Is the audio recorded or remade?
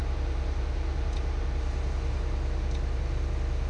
recorded